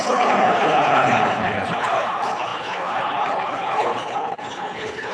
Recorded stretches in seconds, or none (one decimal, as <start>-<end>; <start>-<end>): none